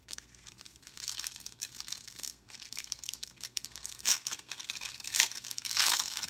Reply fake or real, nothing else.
fake